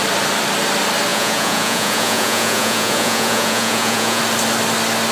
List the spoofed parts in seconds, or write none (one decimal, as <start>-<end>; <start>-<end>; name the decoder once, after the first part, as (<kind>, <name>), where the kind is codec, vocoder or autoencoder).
1.1-4.2 (vocoder, Vocos)